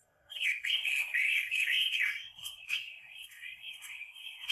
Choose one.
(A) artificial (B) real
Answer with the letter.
A